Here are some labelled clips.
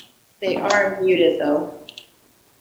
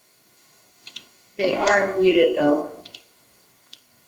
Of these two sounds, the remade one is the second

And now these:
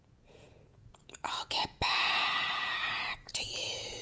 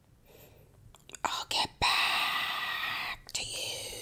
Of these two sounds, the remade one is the first